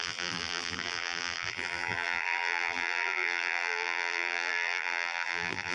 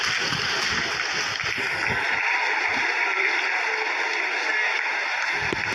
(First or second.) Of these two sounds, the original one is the second